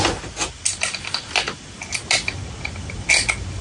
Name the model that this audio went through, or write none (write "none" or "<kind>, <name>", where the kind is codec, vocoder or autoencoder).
none